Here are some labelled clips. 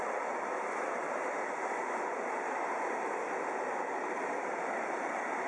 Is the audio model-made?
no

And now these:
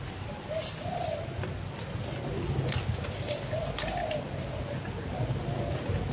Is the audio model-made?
no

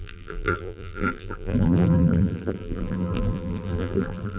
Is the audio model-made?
yes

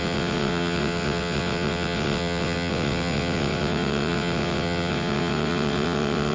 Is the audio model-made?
yes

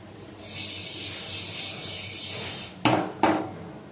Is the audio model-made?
no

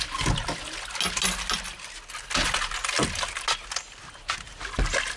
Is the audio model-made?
no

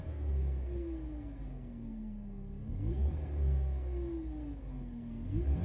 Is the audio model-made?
yes